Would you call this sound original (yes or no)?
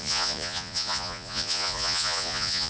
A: no